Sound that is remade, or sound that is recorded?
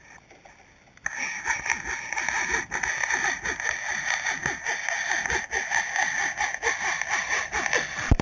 recorded